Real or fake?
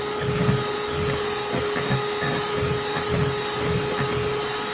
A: real